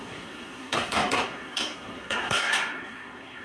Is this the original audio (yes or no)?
no